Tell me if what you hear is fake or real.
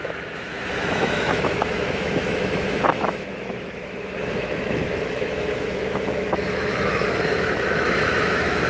fake